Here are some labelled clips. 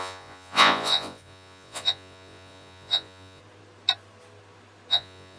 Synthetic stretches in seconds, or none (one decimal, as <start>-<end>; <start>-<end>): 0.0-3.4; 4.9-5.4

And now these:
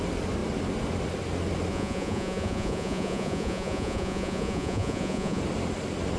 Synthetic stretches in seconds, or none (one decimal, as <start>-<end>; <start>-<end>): 1.7-5.4

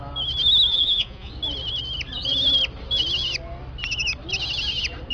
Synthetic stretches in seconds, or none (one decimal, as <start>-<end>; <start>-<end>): 0.7-1.3

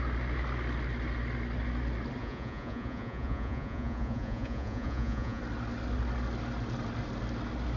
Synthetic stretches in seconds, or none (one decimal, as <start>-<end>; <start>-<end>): 2.2-5.4

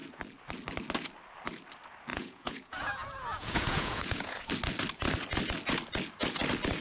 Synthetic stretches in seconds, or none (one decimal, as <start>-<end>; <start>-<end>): 2.1-4.5